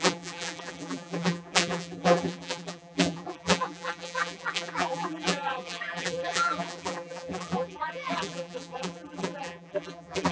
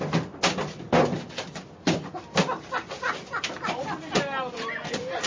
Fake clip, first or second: first